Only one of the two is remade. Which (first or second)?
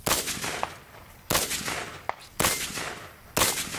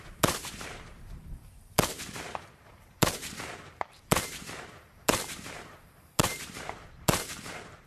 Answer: second